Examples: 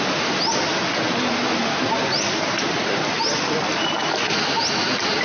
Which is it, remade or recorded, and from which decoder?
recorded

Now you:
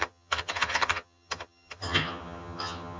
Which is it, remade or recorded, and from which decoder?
remade, vocoder, HiFi-GAN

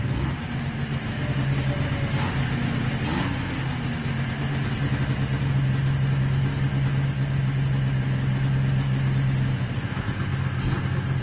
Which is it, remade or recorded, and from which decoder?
recorded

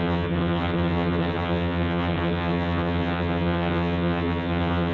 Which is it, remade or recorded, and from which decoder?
remade, vocoder, HiFi-GAN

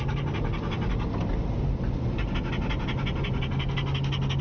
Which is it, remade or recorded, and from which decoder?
recorded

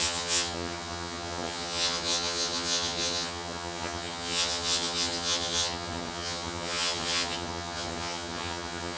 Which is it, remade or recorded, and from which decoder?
remade, vocoder, HiFi-GAN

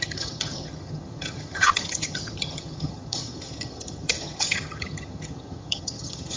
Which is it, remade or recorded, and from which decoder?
remade, vocoder, HiFi-GAN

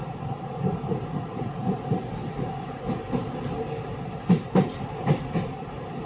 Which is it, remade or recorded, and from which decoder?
recorded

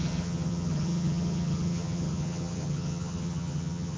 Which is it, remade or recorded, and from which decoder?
remade, vocoder, HiFi-GAN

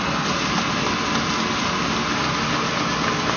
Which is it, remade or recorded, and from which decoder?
recorded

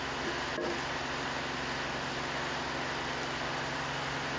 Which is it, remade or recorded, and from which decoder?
recorded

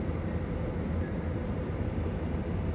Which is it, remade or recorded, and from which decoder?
recorded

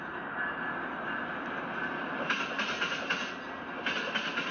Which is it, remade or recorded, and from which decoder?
recorded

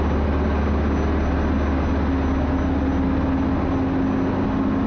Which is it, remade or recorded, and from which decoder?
recorded